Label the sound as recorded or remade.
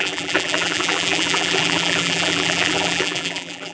remade